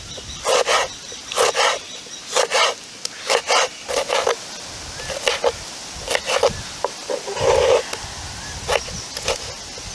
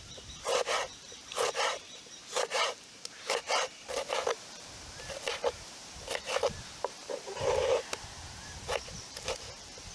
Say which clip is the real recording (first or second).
first